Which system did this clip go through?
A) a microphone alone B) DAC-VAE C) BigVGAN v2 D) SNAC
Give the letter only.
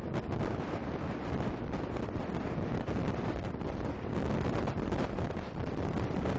A